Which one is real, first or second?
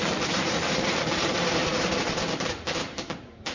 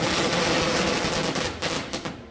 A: second